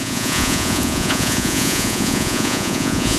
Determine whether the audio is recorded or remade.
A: remade